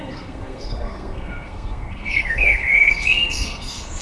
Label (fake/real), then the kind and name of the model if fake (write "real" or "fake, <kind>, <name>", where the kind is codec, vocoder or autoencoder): fake, codec, SNAC